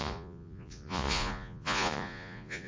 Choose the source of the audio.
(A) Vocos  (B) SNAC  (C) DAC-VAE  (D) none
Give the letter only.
A